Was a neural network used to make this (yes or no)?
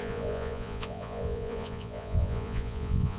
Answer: yes